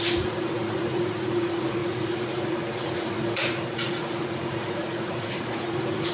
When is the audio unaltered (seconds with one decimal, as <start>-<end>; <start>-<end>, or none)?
none